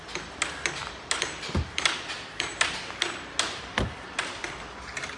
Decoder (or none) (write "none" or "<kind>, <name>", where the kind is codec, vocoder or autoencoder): none